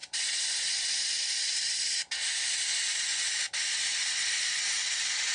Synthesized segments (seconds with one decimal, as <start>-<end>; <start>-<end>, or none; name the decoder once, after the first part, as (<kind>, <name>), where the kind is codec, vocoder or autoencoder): none